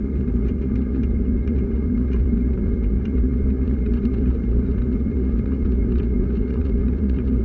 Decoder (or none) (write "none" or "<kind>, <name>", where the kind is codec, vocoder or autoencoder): vocoder, Vocos